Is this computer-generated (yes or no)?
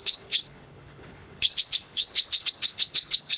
yes